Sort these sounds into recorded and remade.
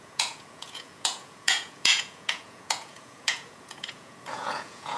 remade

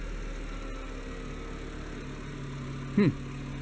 recorded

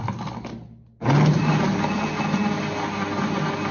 recorded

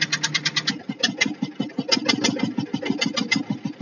recorded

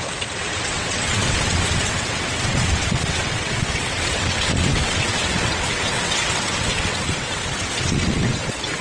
remade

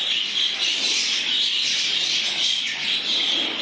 recorded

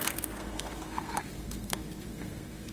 remade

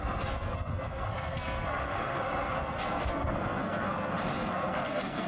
remade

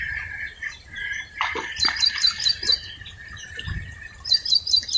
remade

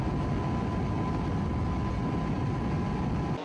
recorded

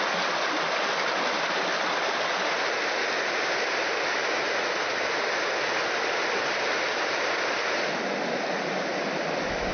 recorded